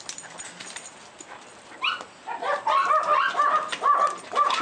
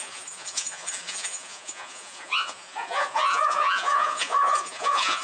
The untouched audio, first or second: first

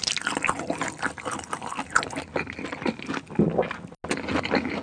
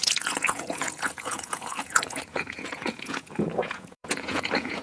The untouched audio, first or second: first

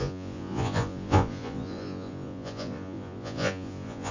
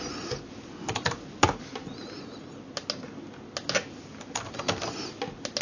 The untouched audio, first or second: second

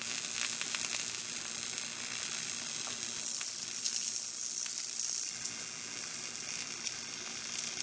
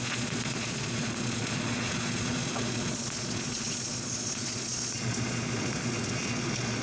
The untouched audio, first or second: first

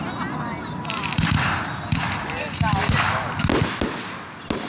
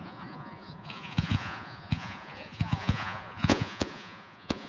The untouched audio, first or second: first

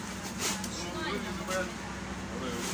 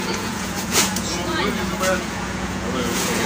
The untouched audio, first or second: first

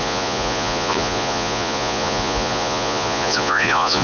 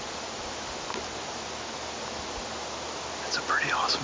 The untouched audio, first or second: second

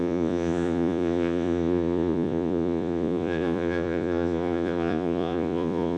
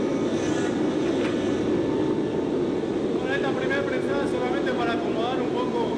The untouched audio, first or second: second